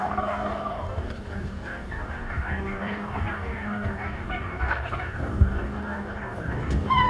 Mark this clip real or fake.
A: fake